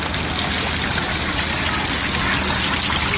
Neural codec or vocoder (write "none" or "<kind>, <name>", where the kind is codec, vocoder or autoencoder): none